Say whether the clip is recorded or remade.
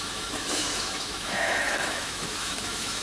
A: remade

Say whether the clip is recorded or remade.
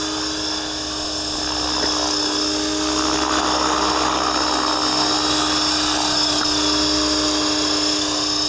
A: recorded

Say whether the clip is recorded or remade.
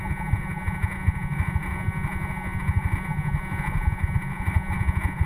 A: remade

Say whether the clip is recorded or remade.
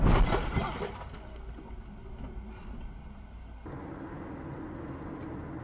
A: recorded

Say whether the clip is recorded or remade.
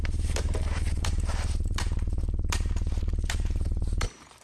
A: remade